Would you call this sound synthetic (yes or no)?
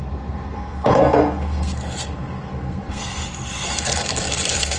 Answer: yes